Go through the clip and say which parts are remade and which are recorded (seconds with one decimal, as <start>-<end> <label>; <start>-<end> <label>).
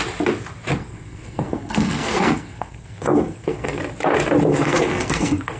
0.0-0.8 recorded; 0.8-3.8 remade; 3.8-4.5 recorded; 4.5-5.6 remade